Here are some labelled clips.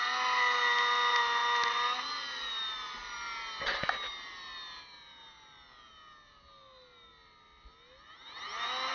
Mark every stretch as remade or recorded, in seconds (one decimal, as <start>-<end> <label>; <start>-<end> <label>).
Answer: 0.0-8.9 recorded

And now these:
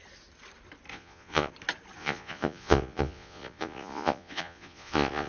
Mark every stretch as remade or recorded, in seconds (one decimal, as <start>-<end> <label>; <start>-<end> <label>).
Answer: 0.0-0.9 recorded; 0.9-1.5 remade; 1.5-2.0 recorded; 2.0-5.3 remade

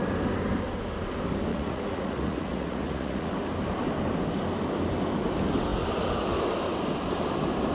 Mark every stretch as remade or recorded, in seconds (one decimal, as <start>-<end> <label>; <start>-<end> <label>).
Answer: 0.0-1.5 recorded; 1.5-3.3 remade; 3.3-7.7 recorded

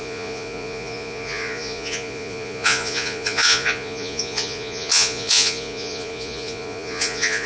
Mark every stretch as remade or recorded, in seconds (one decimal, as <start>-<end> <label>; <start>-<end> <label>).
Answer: 0.0-7.5 remade

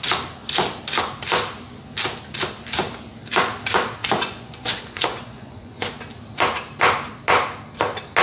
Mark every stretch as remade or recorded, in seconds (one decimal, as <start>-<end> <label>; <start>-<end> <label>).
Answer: 0.0-4.0 recorded; 4.0-5.9 remade; 5.9-8.2 recorded